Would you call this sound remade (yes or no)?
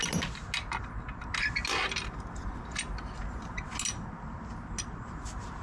no